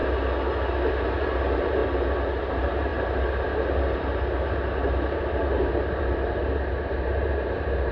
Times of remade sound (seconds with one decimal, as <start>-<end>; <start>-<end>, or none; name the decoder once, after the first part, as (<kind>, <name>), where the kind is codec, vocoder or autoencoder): 0.9-1.8 (vocoder, BigVGAN v2); 2.5-7.9